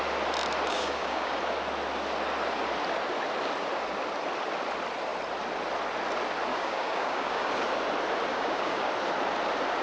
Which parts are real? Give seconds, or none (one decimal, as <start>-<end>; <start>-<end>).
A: 0.0-0.7; 1.4-6.5; 7.5-8.3; 8.9-9.8